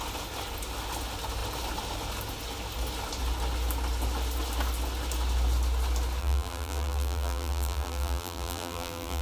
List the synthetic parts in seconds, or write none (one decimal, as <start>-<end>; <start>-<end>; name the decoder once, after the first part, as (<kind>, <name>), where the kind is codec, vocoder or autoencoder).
6.2-9.2 (vocoder, BigVGAN v2)